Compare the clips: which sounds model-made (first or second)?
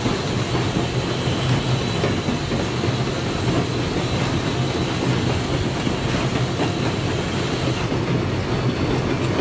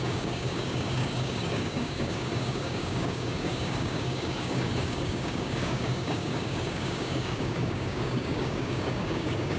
second